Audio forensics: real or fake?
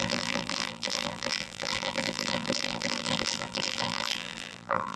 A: fake